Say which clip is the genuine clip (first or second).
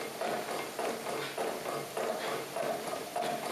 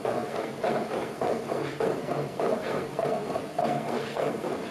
first